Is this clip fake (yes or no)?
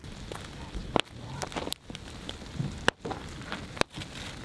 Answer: no